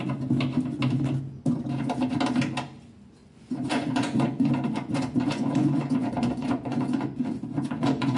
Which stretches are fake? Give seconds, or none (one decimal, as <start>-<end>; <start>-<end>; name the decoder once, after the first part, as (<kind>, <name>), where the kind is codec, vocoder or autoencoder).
3.2-4.5 (vocoder, Vocos); 4.9-8.2